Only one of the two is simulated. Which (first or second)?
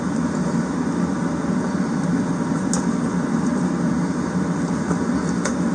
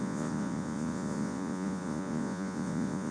second